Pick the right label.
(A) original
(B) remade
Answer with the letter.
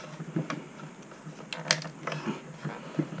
A